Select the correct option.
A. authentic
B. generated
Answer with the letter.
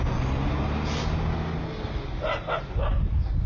A